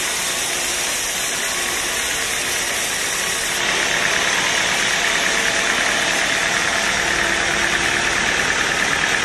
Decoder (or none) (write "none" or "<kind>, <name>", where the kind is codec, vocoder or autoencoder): none